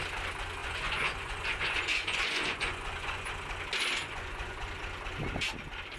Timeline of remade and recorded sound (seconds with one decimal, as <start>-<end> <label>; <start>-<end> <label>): 0.0-0.6 recorded; 0.6-3.3 remade; 3.3-4.0 recorded; 4.0-4.7 remade; 4.7-6.0 recorded